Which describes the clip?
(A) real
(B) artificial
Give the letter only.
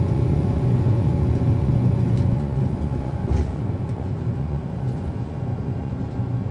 B